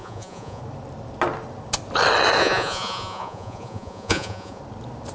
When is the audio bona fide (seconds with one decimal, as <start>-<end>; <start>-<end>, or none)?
0.6-2.4; 4.6-5.1